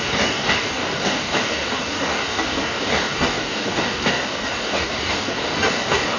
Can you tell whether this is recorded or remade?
remade